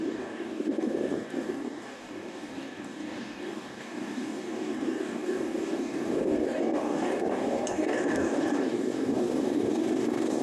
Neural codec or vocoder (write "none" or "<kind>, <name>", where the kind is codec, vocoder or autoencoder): codec, DAC